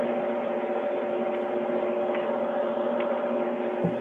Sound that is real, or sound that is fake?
real